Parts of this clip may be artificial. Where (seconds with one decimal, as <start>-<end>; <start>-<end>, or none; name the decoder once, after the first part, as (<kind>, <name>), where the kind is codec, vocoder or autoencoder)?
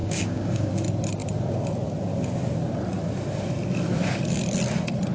0.0-0.7 (codec, DAC)